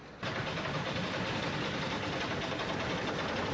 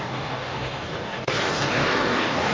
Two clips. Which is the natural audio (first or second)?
first